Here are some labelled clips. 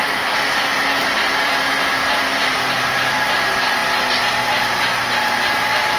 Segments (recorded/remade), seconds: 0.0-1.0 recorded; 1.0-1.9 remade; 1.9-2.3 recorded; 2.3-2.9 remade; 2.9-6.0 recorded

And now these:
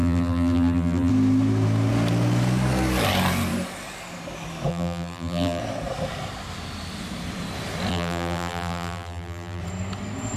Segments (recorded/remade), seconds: 0.0-1.1 remade; 1.1-4.7 recorded; 4.7-5.6 remade; 5.6-7.9 recorded; 7.9-9.6 remade; 9.6-10.4 recorded

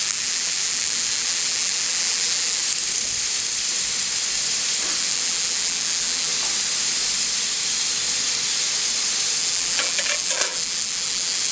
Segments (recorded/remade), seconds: 0.0-2.6 remade; 2.6-5.0 recorded; 5.0-6.3 remade; 6.3-9.4 recorded; 9.4-11.5 remade

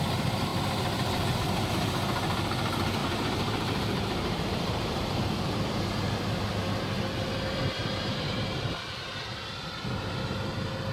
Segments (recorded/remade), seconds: 0.0-3.0 recorded; 3.0-5.7 remade; 5.7-7.8 recorded; 7.8-8.9 remade; 8.9-10.9 recorded

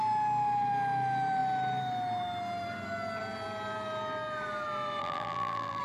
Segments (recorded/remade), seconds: 0.0-5.0 recorded; 5.0-5.8 remade

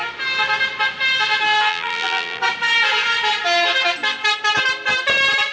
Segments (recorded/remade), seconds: 0.0-1.7 recorded; 1.7-2.4 remade; 2.4-5.5 recorded

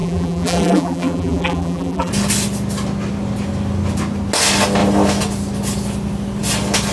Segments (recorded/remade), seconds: 0.0-2.1 remade; 2.1-6.9 recorded